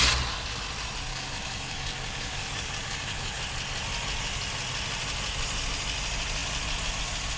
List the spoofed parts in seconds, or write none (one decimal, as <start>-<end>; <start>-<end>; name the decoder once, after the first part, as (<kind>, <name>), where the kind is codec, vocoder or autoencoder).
1.1-3.4 (codec, DAC)